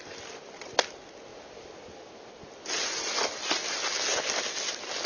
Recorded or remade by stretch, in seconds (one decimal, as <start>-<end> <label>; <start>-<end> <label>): 0.0-5.1 recorded